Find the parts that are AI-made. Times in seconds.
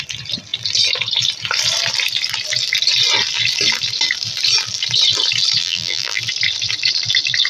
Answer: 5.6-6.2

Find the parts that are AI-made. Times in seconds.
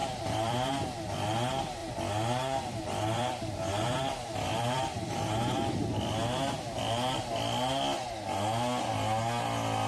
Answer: 0.0-0.7; 1.8-6.8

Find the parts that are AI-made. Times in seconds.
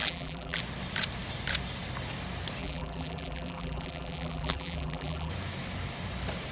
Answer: 0.0-0.6; 2.6-5.3